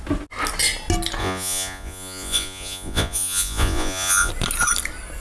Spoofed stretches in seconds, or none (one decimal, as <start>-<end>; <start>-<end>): 1.2-4.3